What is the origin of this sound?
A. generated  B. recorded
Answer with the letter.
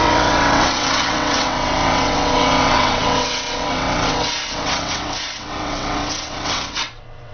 A